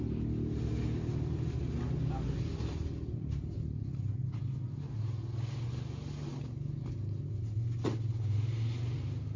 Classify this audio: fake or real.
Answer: real